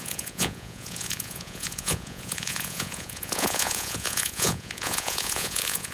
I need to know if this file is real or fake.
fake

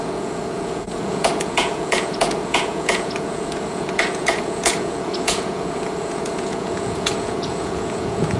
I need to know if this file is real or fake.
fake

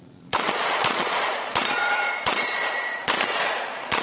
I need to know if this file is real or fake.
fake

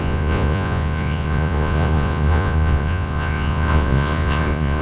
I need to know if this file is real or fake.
fake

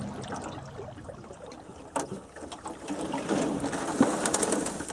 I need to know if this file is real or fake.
real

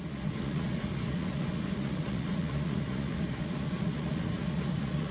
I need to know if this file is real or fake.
fake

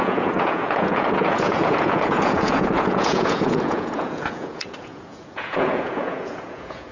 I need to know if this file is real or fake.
fake